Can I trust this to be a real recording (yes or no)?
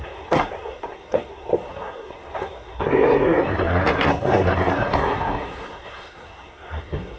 no